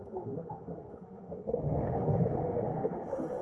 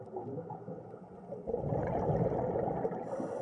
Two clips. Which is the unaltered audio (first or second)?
second